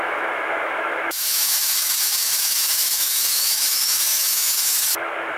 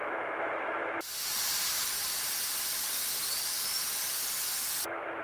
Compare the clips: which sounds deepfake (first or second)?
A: first